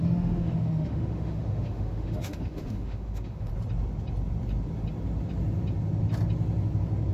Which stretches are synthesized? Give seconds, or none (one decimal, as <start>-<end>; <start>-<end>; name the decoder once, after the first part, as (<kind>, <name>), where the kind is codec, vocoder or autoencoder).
0.0-3.5 (autoencoder, DAC-VAE)